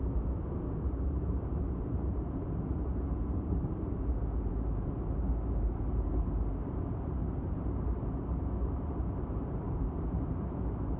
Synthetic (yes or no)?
yes